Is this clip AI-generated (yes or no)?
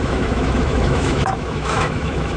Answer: yes